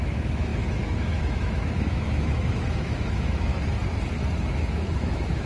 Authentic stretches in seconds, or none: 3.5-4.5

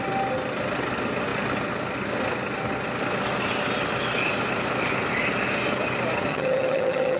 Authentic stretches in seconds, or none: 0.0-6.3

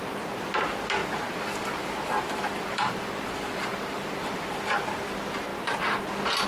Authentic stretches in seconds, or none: 0.0-1.0; 4.9-6.5

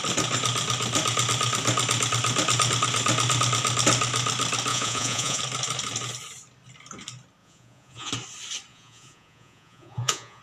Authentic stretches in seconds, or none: 0.0-4.7; 5.4-7.4; 8.1-8.7